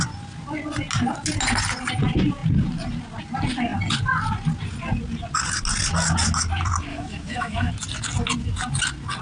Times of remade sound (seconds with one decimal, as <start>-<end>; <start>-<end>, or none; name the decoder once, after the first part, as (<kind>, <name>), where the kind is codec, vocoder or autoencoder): 6.9-7.7 (autoencoder, DAC-VAE)